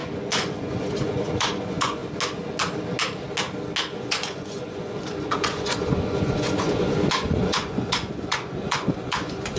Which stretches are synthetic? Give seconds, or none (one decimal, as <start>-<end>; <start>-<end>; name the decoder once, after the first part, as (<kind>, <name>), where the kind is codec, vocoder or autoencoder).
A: 0.0-2.0 (vocoder, Vocos); 4.0-9.6